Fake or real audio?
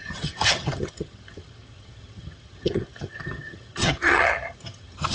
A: fake